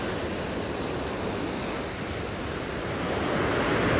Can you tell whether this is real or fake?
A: real